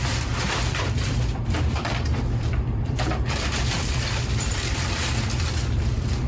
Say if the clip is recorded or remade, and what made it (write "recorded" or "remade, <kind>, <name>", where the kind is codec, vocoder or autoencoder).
remade, vocoder, BigVGAN v2